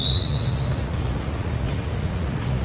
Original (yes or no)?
no